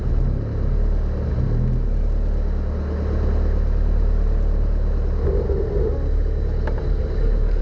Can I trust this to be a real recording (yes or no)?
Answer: yes